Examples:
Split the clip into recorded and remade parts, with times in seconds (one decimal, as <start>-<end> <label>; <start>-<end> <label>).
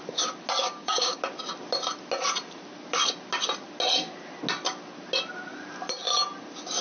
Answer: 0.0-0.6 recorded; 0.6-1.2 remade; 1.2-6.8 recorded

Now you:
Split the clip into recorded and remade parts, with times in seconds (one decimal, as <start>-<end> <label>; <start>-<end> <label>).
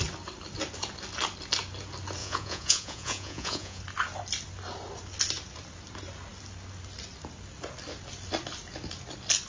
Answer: 0.0-2.2 recorded; 2.2-3.8 remade; 3.8-9.5 recorded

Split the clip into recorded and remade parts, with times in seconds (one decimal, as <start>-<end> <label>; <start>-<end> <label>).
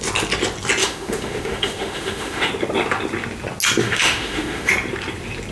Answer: 0.0-0.8 recorded; 0.8-2.5 remade; 2.5-3.8 recorded; 3.8-4.7 remade; 4.7-5.5 recorded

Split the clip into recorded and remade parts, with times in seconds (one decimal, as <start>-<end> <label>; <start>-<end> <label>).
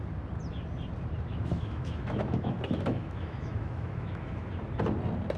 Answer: 0.0-1.3 recorded; 1.3-4.5 remade; 4.5-5.4 recorded